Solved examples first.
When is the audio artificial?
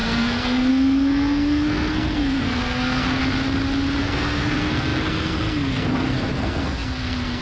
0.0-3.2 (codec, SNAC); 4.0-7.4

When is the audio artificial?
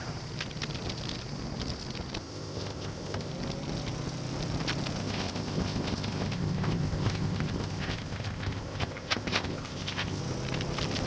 2.2-3.3 (codec, ZipCodec); 5.0-10.2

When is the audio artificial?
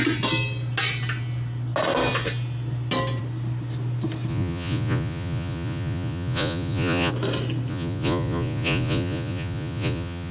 4.3-7.1 (vocoder, Vocos); 7.7-10.3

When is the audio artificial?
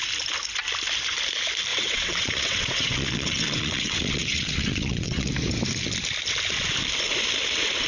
1.7-5.3 (vocoder, WaveNeXt)